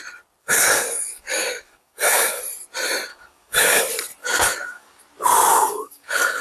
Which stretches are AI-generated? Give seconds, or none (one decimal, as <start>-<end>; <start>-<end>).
0.4-2.4; 3.1-3.8; 4.2-5.0; 5.5-6.4